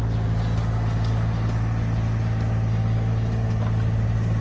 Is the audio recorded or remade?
recorded